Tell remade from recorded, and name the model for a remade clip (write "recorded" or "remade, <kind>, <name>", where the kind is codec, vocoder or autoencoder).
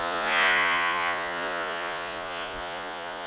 remade, vocoder, Vocos